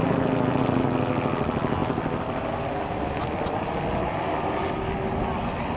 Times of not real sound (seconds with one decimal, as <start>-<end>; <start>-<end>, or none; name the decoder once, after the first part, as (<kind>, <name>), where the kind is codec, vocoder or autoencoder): none